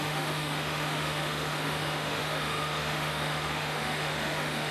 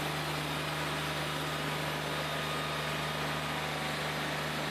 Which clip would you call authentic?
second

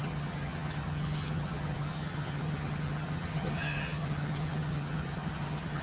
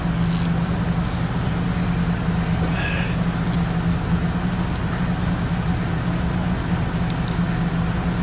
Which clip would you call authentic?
second